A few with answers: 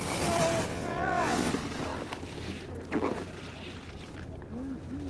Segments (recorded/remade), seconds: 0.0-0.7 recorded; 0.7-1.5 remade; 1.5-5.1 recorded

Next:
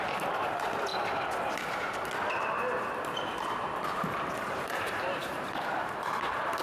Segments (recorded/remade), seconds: 0.0-0.9 remade; 0.9-4.5 recorded; 4.5-6.6 remade

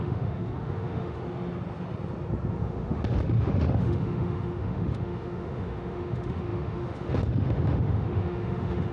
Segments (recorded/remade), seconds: 0.0-1.2 remade; 1.2-2.5 recorded; 2.5-8.9 remade

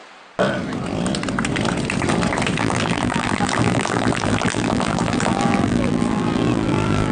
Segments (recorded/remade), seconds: 0.0-2.6 recorded; 2.6-7.1 remade

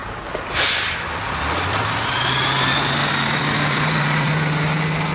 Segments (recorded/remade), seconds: 0.0-1.8 remade; 1.8-3.0 recorded; 3.0-4.3 remade; 4.3-5.1 recorded

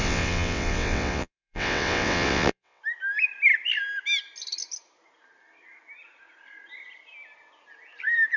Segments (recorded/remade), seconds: 0.0-2.8 remade; 2.8-8.4 recorded

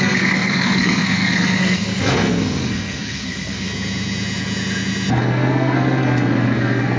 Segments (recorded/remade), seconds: 0.0-3.7 remade; 3.7-5.1 recorded; 5.1-7.0 remade